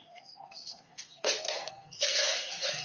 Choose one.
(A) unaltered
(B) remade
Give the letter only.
B